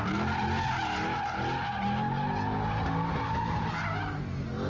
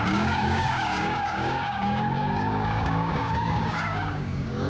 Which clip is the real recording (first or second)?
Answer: first